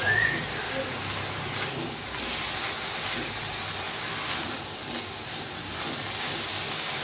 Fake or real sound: real